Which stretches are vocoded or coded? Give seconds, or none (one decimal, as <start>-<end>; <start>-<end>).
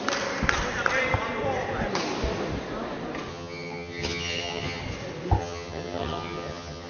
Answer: 3.3-4.8; 5.4-6.9